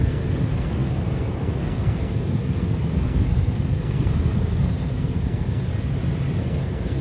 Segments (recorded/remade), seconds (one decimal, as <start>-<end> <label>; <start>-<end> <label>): 0.0-5.7 remade; 5.7-6.4 recorded; 6.4-7.0 remade